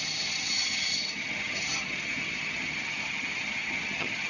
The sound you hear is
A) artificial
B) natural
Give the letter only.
A